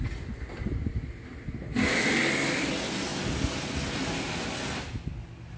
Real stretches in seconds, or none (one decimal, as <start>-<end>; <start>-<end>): 0.0-5.6